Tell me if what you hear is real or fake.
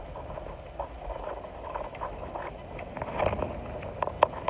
real